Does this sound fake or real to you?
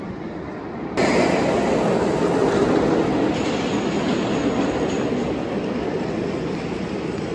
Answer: real